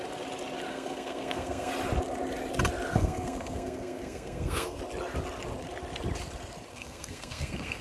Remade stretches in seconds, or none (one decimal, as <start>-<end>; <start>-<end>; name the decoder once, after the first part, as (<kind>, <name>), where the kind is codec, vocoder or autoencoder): 0.7-1.7 (codec, SNAC); 2.9-4.8; 6.7-7.8